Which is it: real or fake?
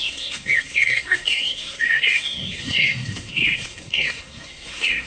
fake